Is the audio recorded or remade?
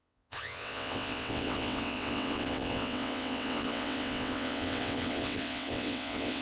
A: remade